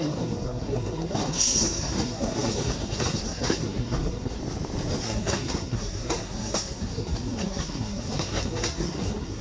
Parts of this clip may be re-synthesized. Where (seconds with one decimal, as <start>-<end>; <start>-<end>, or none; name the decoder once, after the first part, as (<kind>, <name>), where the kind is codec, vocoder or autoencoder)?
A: 0.0-4.4 (codec, SNAC); 5.0-9.4